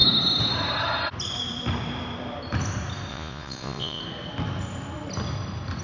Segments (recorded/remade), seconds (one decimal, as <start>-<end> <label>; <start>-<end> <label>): 0.0-3.1 recorded; 3.1-4.0 remade; 4.0-5.8 recorded